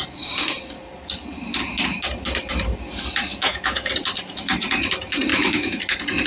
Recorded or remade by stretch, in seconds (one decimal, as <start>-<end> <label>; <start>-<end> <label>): 0.0-3.3 recorded; 3.3-3.9 remade; 3.9-5.3 recorded; 5.3-5.8 remade; 5.8-6.3 recorded